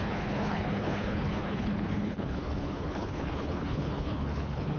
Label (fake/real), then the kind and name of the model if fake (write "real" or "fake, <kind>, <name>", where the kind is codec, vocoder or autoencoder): fake, codec, HILCodec